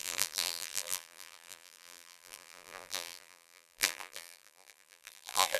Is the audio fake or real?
fake